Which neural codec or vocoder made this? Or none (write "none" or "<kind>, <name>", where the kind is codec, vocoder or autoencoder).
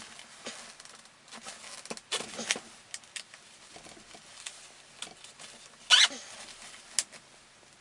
none